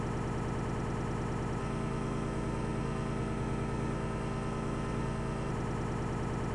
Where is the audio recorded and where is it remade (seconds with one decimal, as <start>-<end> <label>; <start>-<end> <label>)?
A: 0.0-1.6 recorded; 1.6-5.5 remade; 5.5-6.5 recorded